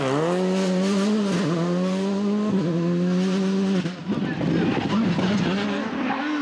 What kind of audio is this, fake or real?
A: real